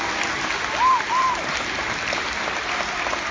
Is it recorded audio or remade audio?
recorded